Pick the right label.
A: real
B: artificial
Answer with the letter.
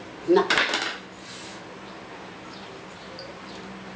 B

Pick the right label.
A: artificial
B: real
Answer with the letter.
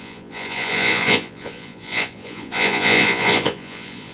A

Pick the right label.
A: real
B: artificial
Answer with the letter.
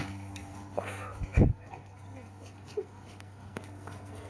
B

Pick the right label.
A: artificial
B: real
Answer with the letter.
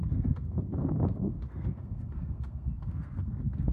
A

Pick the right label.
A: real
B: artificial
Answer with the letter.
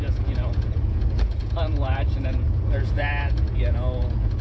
B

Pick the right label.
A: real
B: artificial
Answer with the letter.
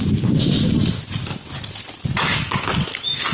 A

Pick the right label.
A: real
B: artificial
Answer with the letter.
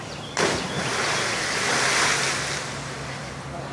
A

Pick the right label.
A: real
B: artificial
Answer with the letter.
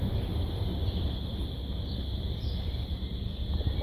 A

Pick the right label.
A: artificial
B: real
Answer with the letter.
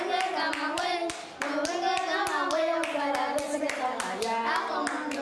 B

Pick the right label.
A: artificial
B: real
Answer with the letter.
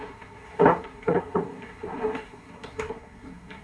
A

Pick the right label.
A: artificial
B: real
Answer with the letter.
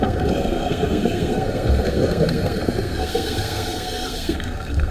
A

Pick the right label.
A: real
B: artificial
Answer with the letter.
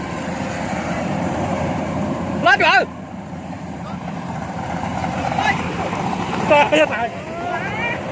B